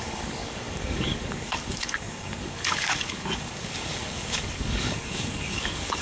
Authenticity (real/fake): fake